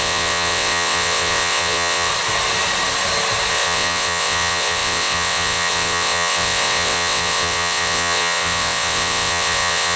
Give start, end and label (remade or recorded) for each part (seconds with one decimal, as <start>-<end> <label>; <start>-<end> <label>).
0.0-2.1 remade; 2.1-3.5 recorded; 3.5-10.0 remade